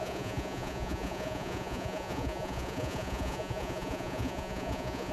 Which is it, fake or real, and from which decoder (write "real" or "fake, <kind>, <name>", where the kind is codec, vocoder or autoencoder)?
fake, vocoder, Vocos